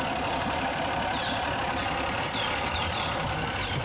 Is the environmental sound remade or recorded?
recorded